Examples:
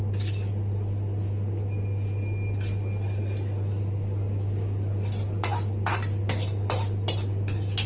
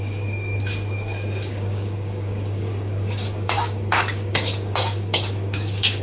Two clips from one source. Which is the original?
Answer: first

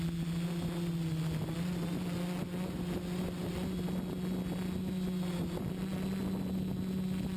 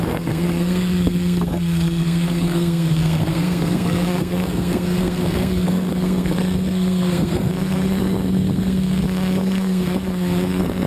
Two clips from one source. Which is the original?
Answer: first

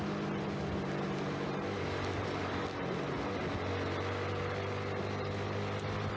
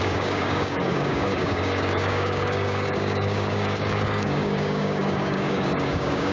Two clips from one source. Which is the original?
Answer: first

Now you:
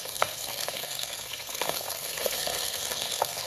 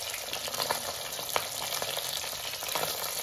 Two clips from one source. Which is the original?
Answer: second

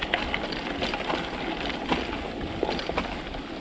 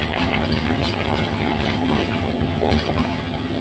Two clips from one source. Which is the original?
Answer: first